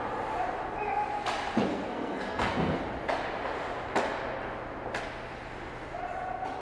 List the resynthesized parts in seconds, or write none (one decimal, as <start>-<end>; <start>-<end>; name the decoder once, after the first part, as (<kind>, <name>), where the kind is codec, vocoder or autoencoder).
1.7-2.8 (codec, SNAC)

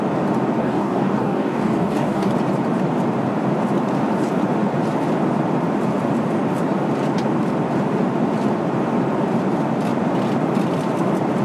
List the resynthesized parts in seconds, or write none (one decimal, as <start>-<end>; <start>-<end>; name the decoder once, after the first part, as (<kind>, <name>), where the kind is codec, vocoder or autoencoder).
0.6-2.3 (codec, DAC)

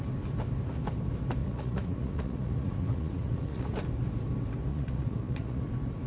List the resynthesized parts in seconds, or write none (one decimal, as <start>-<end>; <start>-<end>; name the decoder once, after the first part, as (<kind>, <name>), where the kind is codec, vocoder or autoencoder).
1.4-3.8 (vocoder, Vocos); 4.7-5.6

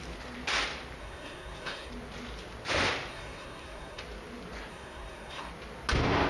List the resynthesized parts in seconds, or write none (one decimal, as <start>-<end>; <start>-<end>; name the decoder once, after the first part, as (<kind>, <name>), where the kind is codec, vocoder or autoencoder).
1.0-1.9 (codec, SNAC); 3.1-4.0; 4.7-5.5

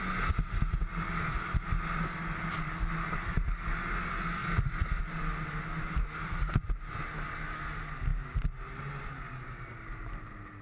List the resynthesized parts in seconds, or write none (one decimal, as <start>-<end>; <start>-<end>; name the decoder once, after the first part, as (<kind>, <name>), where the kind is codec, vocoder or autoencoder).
none

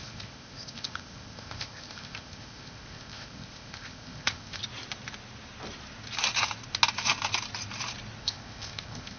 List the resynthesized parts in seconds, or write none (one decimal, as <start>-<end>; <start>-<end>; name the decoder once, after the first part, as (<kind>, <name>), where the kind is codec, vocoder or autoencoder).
0.0-4.6 (codec, ZipCodec); 8.2-9.2

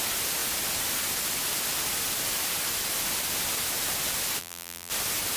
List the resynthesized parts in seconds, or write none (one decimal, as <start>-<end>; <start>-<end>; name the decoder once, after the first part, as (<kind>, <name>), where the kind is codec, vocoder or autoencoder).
4.4-4.9 (vocoder, BigVGAN v2)